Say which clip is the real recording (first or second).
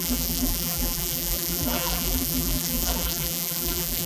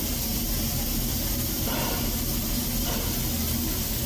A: second